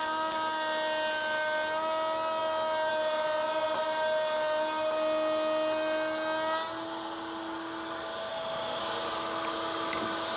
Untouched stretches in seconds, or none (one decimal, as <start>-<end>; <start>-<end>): 0.0-8.3; 8.8-10.4